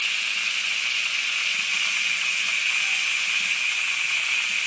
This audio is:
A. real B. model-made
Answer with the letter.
B